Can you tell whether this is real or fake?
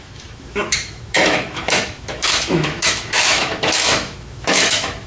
fake